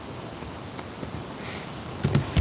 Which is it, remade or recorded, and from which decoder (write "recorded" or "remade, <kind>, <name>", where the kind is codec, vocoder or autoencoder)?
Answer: recorded